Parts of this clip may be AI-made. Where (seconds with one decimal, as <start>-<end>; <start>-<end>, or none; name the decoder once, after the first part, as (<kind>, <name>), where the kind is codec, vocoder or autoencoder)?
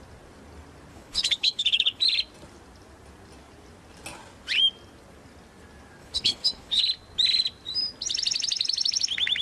0.9-2.0 (codec, HILCodec); 6.0-6.8